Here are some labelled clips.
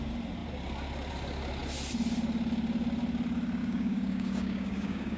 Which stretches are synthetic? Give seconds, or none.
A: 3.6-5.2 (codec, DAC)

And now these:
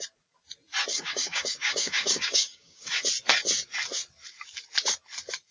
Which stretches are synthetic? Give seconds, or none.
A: 0.9-3.0 (codec, DAC)

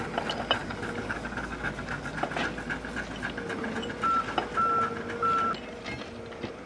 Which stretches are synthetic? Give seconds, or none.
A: 0.6-2.3 (codec, DAC)